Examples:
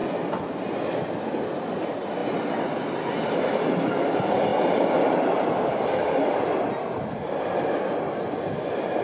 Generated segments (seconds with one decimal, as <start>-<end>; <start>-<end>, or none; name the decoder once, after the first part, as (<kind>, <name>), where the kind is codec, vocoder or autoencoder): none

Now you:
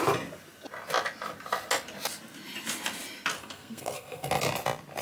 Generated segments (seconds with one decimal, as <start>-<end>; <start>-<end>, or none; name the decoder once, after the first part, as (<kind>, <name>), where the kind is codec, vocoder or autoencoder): 3.4-4.3 (codec, SNAC)

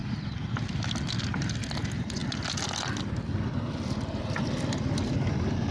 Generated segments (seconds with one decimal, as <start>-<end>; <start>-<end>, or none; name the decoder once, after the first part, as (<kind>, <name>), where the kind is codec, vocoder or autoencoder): none